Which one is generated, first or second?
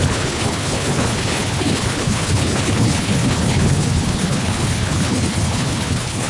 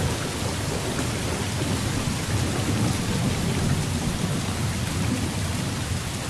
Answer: first